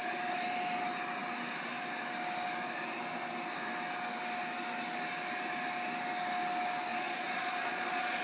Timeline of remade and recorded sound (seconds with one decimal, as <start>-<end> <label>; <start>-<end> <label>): 0.0-6.9 recorded; 6.9-8.2 remade